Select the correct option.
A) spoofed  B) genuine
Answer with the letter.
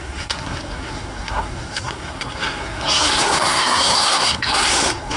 A